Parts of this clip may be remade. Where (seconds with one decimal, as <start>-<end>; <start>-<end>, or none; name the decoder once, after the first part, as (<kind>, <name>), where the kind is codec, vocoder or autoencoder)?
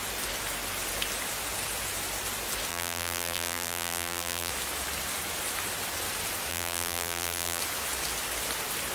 2.7-4.5 (vocoder, BigVGAN v2); 6.5-7.6